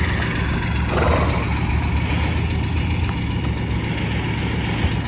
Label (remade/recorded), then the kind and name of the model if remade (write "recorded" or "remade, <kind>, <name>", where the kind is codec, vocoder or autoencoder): recorded